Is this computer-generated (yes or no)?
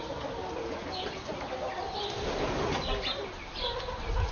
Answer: no